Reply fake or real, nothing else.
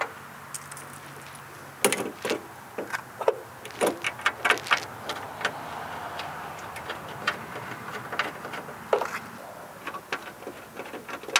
real